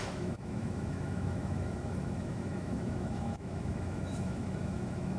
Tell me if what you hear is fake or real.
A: fake